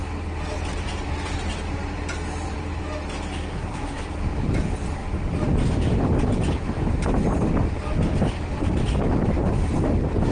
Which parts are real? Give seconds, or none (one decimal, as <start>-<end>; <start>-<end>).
0.0-3.5; 4.0-10.3

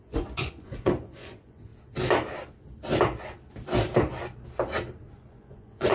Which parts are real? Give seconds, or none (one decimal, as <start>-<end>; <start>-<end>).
1.7-5.1

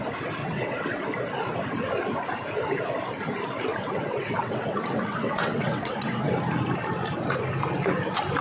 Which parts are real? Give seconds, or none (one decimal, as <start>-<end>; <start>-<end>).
0.0-0.4; 1.0-3.7; 6.3-8.4

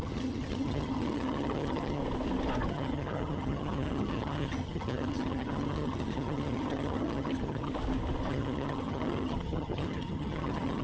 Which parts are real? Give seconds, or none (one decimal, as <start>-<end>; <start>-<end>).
2.0-2.7; 7.7-8.3

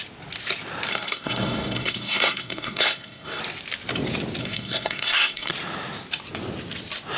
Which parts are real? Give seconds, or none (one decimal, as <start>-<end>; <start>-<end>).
0.0-0.9; 3.4-4.4; 5.5-7.2

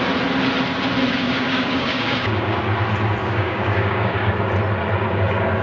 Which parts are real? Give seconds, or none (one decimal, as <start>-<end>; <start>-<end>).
0.0-1.1; 2.6-3.2; 4.3-5.6